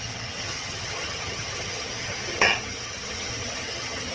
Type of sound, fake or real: fake